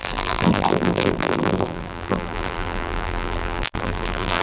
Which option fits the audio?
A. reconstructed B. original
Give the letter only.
A